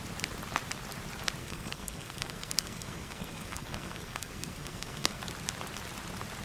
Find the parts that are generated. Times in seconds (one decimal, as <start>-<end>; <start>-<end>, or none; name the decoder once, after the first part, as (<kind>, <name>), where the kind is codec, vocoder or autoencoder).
1.4-5.2 (codec, SNAC)